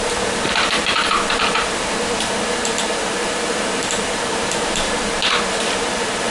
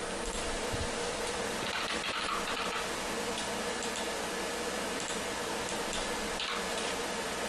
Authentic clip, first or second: second